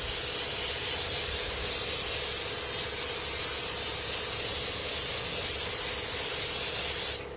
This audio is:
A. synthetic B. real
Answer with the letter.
B